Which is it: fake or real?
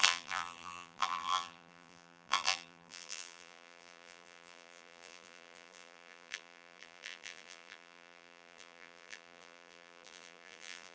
fake